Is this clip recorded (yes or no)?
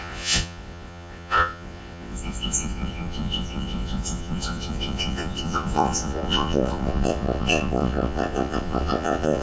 no